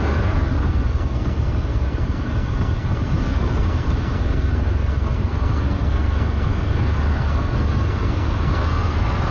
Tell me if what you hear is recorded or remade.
remade